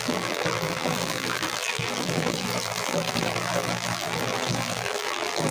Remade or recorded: remade